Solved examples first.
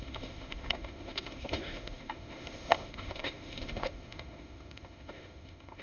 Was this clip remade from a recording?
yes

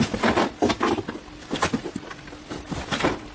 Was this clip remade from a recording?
no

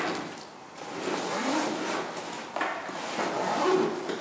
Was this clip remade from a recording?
no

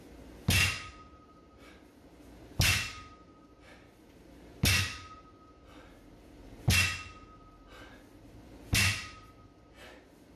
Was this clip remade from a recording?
no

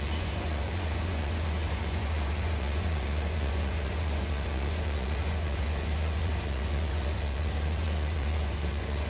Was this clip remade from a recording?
yes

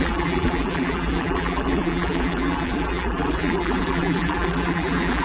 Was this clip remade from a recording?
yes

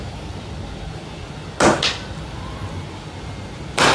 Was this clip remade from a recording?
no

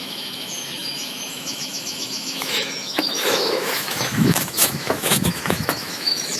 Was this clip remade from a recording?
yes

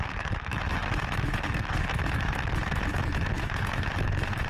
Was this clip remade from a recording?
yes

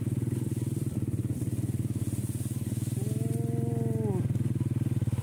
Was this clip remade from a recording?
no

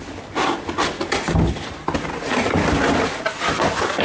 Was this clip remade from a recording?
no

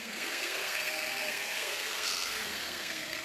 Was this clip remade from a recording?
yes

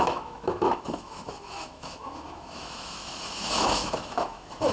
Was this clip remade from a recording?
yes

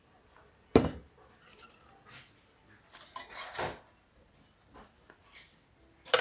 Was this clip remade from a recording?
no